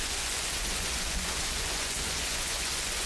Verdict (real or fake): fake